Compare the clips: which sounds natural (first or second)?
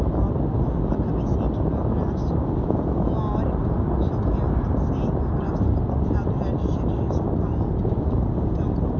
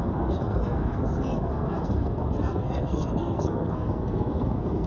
first